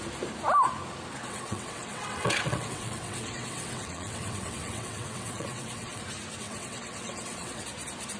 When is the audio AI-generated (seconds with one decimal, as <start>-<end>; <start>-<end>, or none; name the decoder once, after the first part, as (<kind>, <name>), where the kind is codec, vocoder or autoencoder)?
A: 1.2-6.0 (vocoder, WaveNeXt); 6.4-7.6